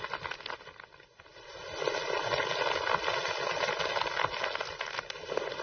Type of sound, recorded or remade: recorded